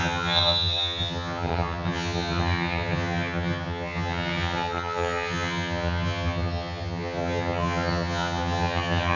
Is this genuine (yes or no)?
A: no